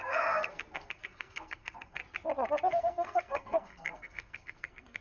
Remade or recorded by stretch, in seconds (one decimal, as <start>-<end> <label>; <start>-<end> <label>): 0.0-2.0 remade; 2.0-2.7 recorded; 2.7-5.0 remade